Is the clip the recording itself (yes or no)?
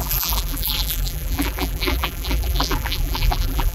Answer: no